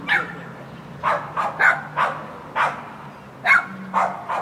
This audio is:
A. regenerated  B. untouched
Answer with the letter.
B